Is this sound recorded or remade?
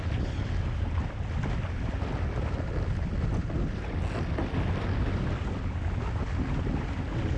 recorded